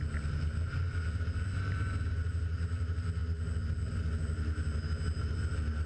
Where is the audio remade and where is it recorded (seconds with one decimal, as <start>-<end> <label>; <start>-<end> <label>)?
0.0-5.9 recorded